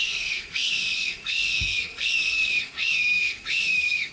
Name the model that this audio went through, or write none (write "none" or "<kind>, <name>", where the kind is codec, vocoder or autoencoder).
codec, SNAC